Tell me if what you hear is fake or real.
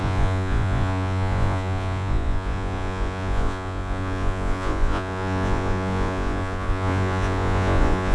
fake